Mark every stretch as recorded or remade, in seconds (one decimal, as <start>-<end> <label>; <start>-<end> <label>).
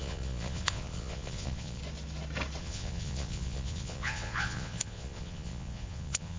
0.0-1.8 remade; 1.8-2.6 recorded; 2.6-6.4 remade